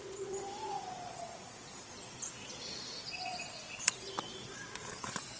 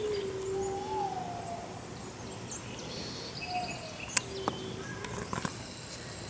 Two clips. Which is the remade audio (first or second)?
first